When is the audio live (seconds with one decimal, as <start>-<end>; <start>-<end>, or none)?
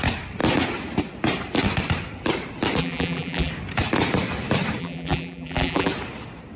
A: 0.0-2.8; 3.5-4.8; 5.9-6.6